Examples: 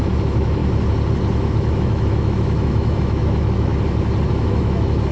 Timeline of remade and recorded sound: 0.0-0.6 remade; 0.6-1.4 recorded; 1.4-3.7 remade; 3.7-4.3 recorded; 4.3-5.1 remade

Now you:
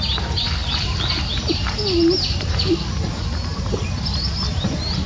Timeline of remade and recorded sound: 0.0-5.1 recorded

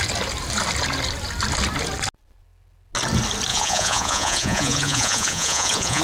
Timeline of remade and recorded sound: 0.0-3.5 recorded; 3.5-6.0 remade

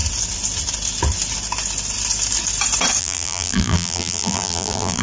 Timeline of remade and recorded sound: 0.0-3.0 recorded; 3.0-5.0 remade

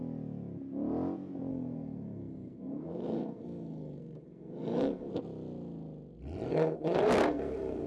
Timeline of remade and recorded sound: 0.0-1.5 recorded; 1.5-5.1 remade; 5.1-6.5 recorded; 6.5-7.9 remade

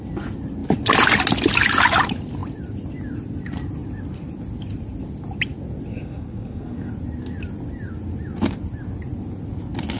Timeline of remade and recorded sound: 0.0-5.9 recorded; 5.9-6.9 remade; 6.9-10.0 recorded

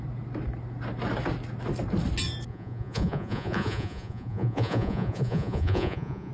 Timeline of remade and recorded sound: 0.0-2.5 recorded; 2.5-6.3 remade

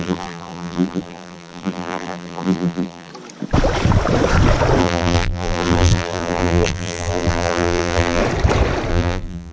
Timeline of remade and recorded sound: 0.0-3.1 remade; 3.1-4.8 recorded; 4.8-8.2 remade; 8.2-8.9 recorded; 8.9-9.5 remade